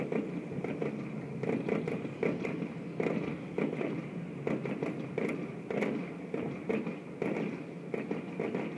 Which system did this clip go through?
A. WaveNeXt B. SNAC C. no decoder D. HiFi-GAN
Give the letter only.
C